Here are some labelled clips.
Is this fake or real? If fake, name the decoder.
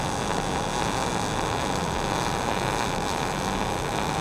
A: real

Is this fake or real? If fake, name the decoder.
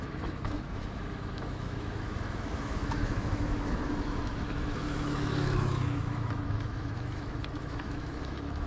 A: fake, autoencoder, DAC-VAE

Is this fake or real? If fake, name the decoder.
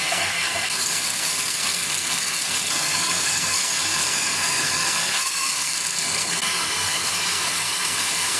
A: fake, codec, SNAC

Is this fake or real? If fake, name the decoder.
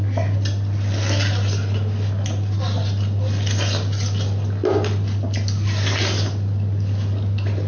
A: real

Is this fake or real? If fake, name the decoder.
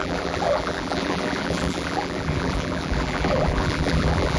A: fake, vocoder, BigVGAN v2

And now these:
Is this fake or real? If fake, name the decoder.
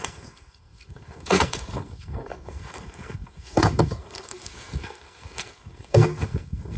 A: fake, codec, SNAC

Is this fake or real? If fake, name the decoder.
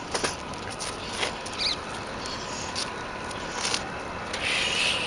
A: real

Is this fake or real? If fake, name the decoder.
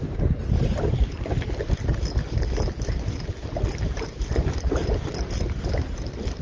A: real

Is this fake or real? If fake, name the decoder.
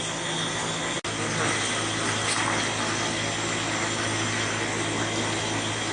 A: real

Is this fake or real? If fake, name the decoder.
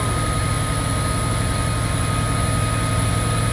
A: real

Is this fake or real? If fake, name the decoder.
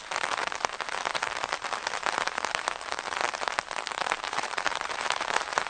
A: fake, vocoder, BigVGAN v2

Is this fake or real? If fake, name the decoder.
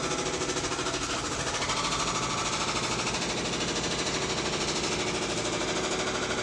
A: real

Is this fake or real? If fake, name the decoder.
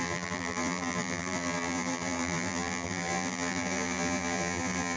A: fake, vocoder, BigVGAN v2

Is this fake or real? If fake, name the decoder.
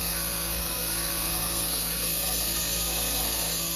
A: fake, codec, SNAC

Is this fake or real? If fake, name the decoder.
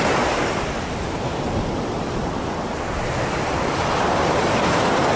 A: real